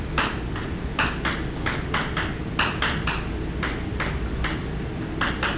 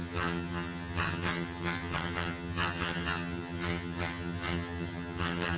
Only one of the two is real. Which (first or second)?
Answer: first